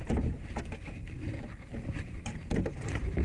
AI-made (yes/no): no